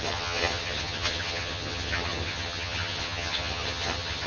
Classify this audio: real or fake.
fake